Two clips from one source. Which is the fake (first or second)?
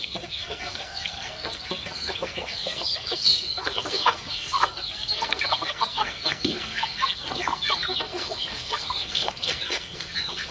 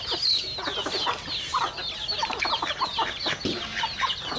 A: first